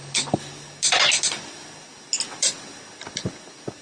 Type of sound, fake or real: real